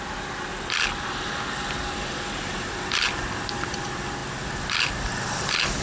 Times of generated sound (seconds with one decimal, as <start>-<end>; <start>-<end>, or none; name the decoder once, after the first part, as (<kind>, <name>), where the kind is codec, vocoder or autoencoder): none